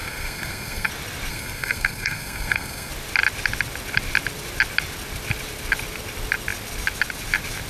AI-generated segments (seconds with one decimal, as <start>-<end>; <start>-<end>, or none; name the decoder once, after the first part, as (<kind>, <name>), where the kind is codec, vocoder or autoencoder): 0.0-0.9 (codec, SNAC); 1.3-2.9